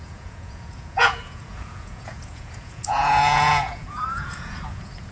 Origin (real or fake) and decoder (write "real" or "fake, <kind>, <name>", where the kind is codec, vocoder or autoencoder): fake, vocoder, Vocos